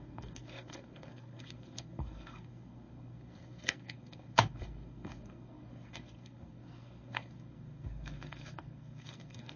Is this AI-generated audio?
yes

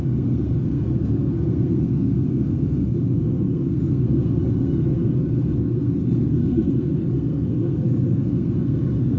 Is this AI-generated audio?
yes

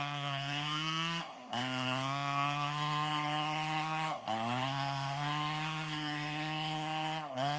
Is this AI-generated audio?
yes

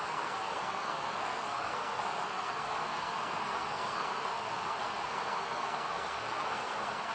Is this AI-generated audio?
yes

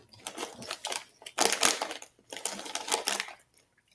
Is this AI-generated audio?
no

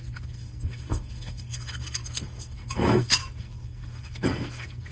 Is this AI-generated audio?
yes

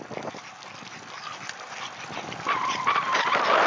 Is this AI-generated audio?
no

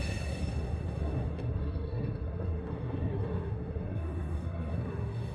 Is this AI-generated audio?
yes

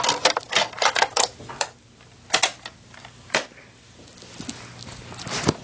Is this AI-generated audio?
no